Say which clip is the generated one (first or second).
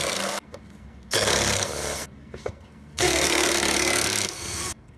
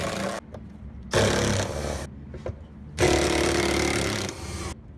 first